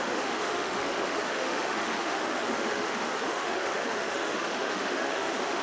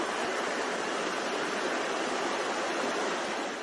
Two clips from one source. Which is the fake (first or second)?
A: first